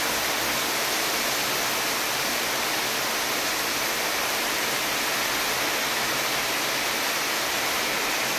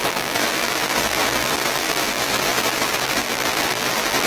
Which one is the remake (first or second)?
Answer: second